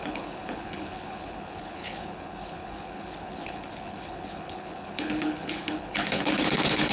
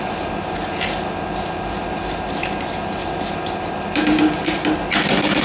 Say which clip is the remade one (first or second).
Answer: first